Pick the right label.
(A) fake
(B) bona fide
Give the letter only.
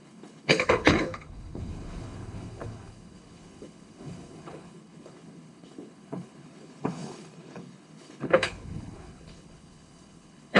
A